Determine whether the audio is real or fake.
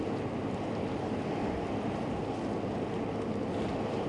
real